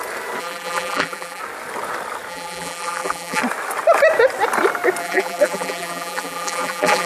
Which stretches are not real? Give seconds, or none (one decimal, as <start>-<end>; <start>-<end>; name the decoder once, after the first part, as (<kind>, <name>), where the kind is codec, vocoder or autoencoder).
0.4-1.4 (vocoder, BigVGAN v2); 2.3-3.4; 5.0-7.1